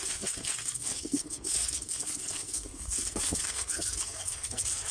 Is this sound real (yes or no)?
no